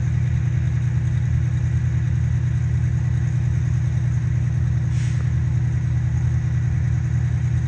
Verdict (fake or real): real